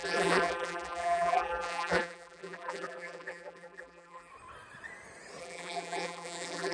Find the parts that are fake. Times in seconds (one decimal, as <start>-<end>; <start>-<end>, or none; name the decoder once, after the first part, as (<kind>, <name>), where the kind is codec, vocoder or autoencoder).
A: 0.0-4.3 (vocoder, BigVGAN v2); 5.4-6.7